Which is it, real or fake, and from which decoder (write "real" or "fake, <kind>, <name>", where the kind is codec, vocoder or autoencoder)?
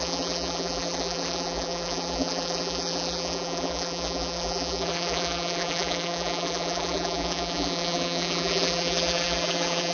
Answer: fake, vocoder, BigVGAN v2